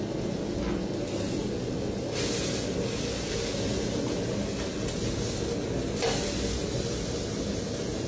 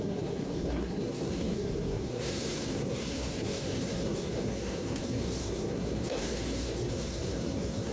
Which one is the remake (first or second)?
second